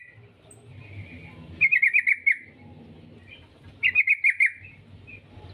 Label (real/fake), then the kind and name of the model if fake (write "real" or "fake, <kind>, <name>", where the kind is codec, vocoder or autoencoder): real